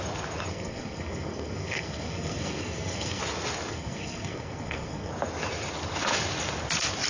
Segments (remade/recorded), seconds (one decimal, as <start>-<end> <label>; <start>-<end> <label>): 0.0-0.5 recorded; 0.5-3.2 remade; 3.2-3.7 recorded; 3.7-5.1 remade; 5.1-7.1 recorded